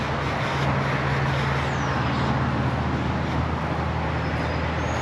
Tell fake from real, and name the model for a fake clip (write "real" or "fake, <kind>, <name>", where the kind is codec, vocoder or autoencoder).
real